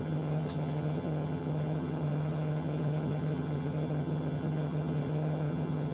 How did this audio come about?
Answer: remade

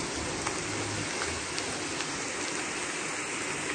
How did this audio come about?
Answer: recorded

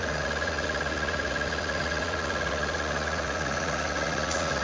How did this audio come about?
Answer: remade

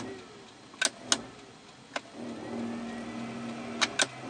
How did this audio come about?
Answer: recorded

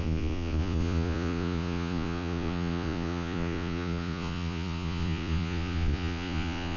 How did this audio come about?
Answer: remade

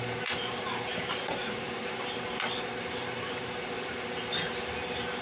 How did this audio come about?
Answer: remade